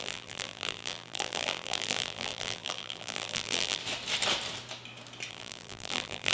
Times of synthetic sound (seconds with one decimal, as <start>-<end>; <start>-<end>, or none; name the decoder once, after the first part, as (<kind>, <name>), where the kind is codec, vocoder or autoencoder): 0.0-3.8 (vocoder, BigVGAN v2); 5.3-6.3